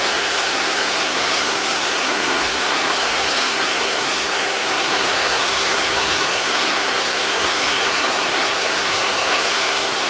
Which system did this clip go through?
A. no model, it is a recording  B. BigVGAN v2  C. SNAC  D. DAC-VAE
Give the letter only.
C